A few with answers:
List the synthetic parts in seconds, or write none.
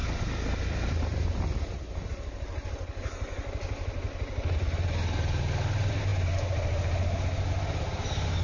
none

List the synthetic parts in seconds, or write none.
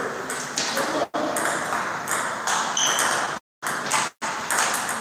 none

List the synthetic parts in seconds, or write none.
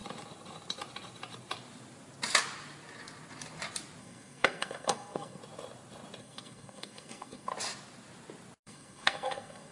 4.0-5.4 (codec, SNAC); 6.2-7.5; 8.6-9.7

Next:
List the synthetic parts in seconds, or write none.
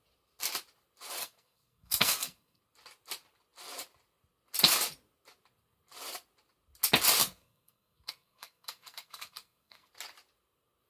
1.2-2.6 (codec, SNAC); 7.2-9.9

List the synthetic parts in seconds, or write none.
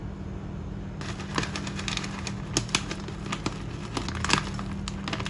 none